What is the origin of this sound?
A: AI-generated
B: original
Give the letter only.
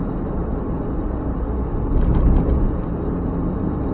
B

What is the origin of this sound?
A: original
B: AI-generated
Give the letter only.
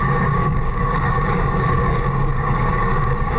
B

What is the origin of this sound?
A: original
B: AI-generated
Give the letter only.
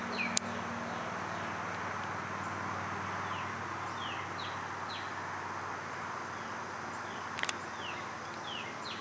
A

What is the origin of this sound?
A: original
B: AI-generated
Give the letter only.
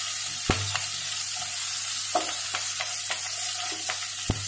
A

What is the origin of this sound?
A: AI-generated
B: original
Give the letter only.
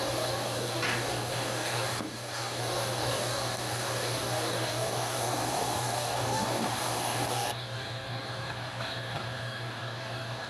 A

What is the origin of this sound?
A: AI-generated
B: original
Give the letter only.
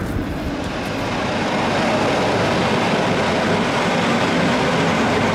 B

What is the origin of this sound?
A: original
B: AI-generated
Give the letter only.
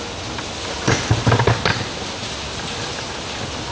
A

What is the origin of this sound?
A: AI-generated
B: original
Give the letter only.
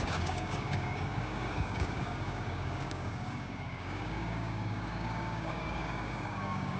A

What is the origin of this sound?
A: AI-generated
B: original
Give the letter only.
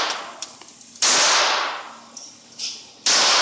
B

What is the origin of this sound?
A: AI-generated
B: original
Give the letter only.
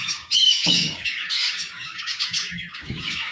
A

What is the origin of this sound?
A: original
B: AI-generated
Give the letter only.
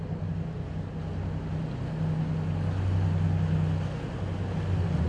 A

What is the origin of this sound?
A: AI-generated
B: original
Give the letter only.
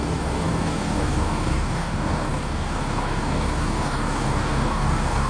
A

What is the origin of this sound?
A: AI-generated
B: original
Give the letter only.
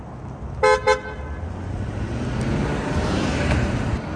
B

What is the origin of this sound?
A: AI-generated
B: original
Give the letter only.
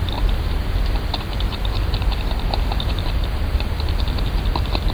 B